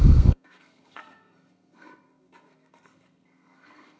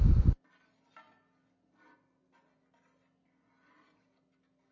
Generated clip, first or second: first